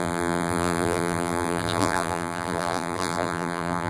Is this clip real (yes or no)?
no